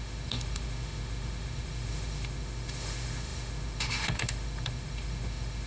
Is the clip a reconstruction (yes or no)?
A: yes